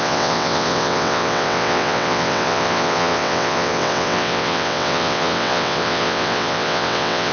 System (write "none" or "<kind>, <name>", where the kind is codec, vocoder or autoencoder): vocoder, WaveNeXt